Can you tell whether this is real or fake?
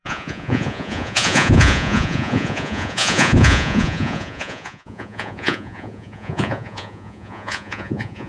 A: fake